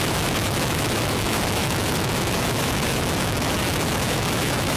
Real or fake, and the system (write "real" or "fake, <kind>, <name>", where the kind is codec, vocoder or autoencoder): fake, autoencoder, DAC-VAE